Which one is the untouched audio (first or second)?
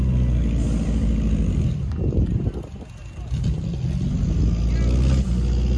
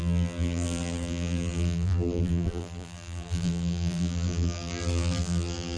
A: first